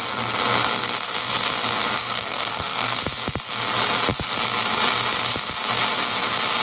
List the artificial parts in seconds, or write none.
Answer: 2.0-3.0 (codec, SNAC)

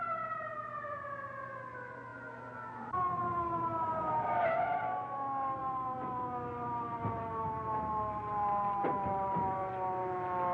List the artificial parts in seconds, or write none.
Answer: none

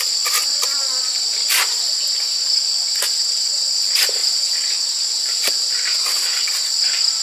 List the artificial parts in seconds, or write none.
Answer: 4.2-6.4 (vocoder, BigVGAN v2)

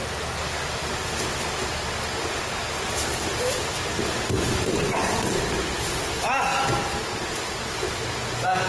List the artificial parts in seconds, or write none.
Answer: none

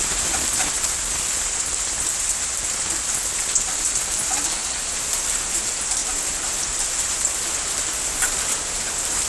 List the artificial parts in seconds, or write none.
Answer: none

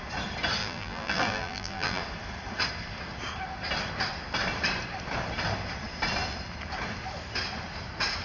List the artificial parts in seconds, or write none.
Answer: 0.6-2.0 (vocoder, BigVGAN v2)

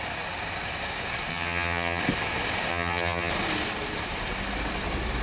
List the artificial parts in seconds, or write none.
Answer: 1.3-2.0 (vocoder, HiFi-GAN); 2.7-3.3